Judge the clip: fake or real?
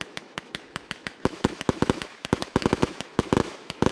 fake